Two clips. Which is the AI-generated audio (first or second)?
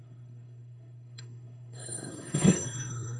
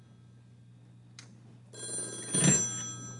first